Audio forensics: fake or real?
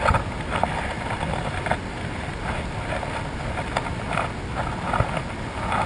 real